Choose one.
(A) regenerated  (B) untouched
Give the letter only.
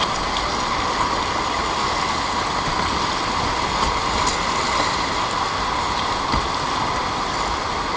B